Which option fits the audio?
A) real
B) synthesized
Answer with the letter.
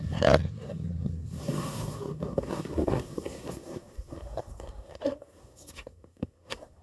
B